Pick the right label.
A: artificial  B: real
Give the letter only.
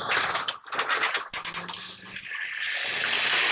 B